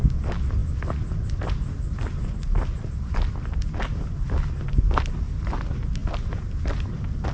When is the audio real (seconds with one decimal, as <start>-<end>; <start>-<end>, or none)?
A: 0.0-7.3